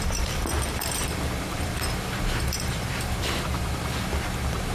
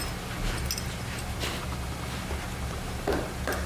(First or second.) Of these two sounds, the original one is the second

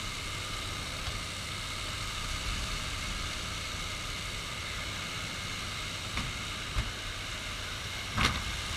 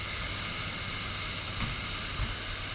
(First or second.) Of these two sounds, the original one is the second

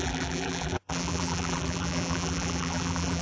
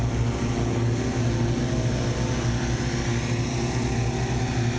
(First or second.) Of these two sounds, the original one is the second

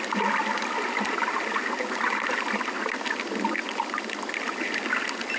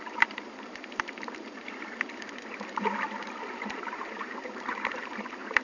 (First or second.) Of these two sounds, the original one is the first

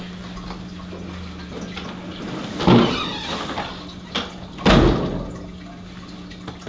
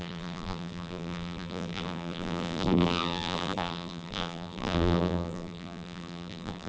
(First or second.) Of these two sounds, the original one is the first